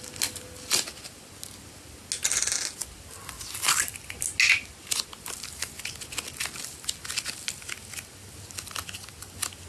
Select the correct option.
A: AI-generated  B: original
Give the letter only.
B